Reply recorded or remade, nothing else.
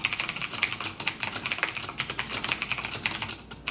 recorded